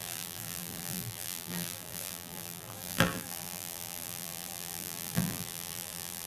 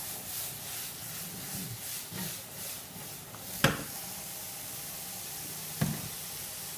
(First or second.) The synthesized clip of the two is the first